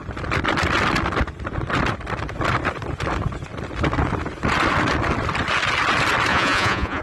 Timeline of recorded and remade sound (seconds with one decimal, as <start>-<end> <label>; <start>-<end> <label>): 0.0-6.3 recorded; 6.3-7.0 remade